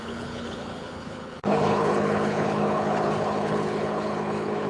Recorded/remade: remade